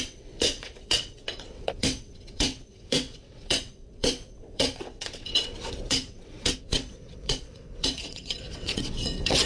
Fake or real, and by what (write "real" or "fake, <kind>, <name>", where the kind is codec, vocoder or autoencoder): fake, vocoder, WaveNeXt